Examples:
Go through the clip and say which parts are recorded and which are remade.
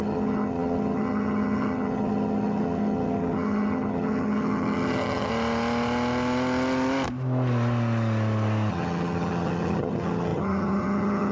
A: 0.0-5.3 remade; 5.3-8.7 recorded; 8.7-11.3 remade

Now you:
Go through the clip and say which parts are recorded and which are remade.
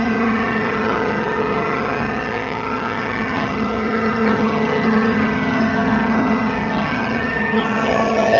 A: 0.0-8.4 remade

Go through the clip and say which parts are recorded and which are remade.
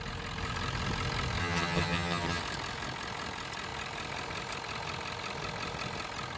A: 0.0-1.4 recorded; 1.4-2.4 remade; 2.4-6.4 recorded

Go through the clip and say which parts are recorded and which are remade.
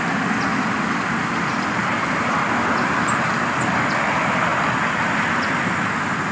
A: 0.0-6.3 recorded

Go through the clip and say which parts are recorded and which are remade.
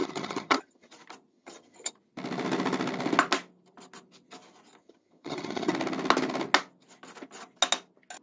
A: 0.0-0.9 remade; 0.9-1.3 recorded; 1.3-1.9 remade; 1.9-4.8 recorded; 4.8-5.7 remade; 5.7-8.2 recorded